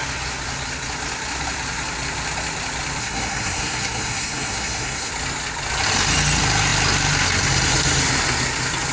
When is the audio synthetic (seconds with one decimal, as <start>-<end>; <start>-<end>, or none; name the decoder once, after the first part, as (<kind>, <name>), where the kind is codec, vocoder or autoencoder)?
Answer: 3.0-5.1 (codec, SNAC)